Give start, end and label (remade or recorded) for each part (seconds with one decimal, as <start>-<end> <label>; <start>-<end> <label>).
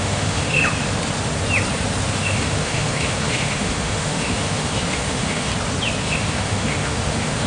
0.0-0.6 remade; 0.6-2.1 recorded; 2.1-5.5 remade; 5.5-6.0 recorded; 6.0-7.5 remade